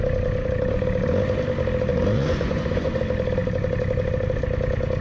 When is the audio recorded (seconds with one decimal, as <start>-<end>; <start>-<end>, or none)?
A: 0.0-1.9; 3.0-5.0